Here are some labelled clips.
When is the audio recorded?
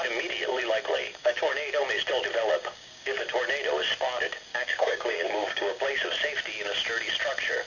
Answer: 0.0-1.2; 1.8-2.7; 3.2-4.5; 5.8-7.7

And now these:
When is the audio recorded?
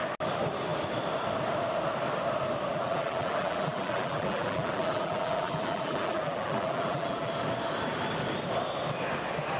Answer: 0.0-2.7; 7.3-9.6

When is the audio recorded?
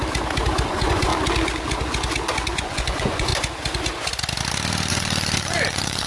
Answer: 0.0-0.7; 1.1-2.6; 3.3-4.9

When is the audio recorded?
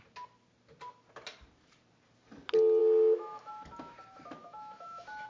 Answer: 0.0-2.8; 3.5-4.4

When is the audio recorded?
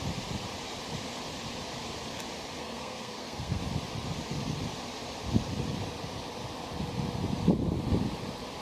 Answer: 0.0-2.6; 3.6-8.6